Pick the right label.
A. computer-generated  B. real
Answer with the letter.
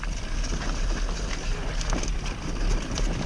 B